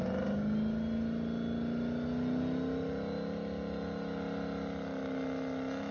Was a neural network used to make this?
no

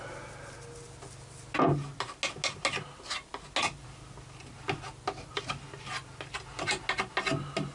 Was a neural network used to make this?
no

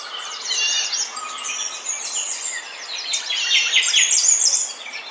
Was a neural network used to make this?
no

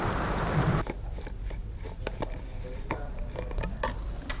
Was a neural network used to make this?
yes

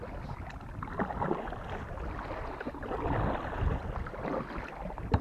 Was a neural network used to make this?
no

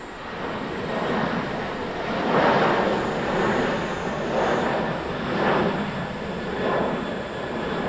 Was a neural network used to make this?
no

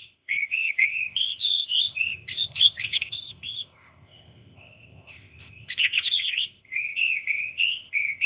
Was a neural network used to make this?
yes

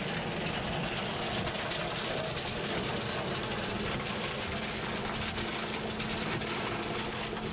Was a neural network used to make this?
no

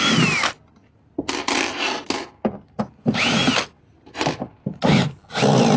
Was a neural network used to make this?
no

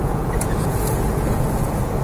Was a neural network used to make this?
yes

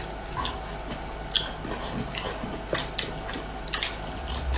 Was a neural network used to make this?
no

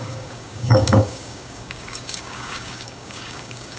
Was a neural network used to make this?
yes